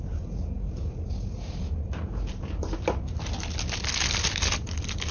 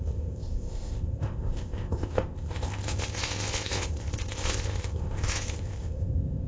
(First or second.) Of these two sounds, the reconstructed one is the second